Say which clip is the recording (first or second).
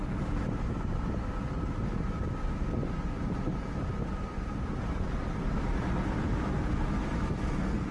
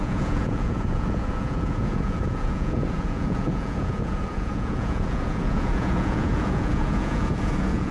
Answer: first